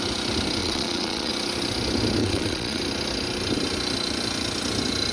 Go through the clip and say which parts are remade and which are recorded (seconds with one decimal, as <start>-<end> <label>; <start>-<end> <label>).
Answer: 0.0-0.6 recorded; 0.6-1.3 remade; 1.3-2.2 recorded; 2.2-2.8 remade; 2.8-5.1 recorded